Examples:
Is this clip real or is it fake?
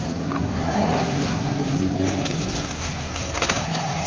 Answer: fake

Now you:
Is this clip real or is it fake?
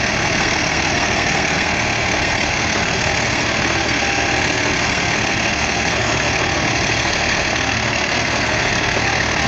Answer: fake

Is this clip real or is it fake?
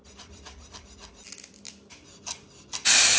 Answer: real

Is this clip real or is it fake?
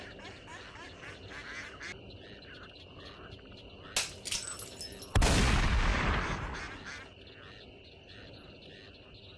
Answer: real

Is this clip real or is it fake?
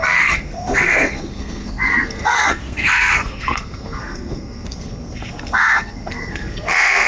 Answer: fake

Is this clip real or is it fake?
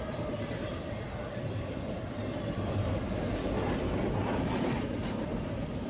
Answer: real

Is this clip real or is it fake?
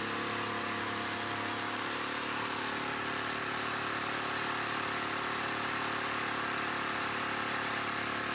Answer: real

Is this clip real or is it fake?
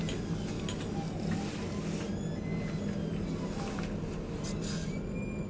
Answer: real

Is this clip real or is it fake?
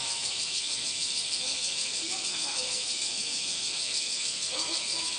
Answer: fake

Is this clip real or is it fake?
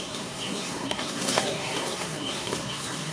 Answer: fake